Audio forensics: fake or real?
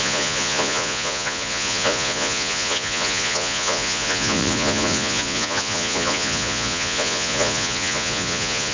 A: fake